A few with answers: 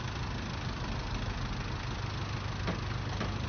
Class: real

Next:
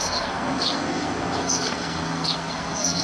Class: fake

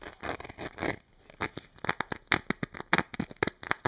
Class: real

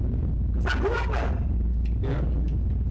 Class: real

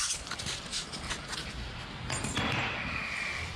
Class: real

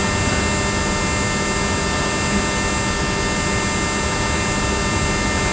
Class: real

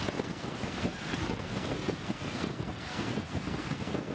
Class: fake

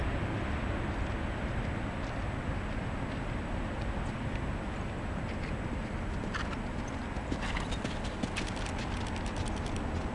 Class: real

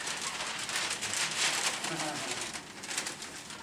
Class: real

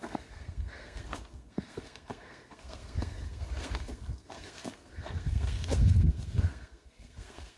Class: fake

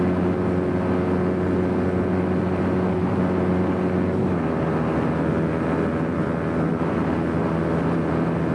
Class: real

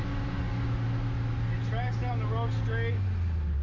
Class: real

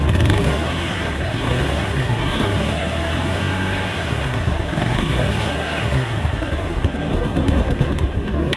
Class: fake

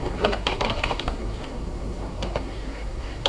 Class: fake